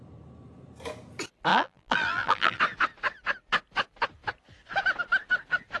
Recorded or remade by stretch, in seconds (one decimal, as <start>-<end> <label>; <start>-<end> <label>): 0.0-1.5 recorded; 1.5-2.6 remade; 2.6-5.8 recorded

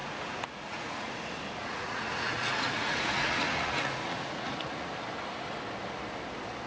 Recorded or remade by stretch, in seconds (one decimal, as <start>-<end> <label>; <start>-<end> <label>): 0.0-1.1 remade; 1.1-1.6 recorded; 1.6-4.9 remade; 4.9-6.7 recorded

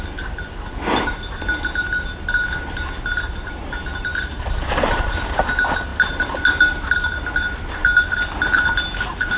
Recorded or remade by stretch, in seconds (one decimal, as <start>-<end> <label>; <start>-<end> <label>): 0.0-9.4 recorded